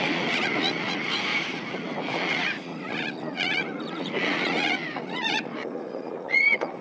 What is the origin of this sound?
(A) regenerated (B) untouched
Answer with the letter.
A